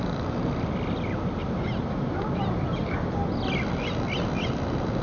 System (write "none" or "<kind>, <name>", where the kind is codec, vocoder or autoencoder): none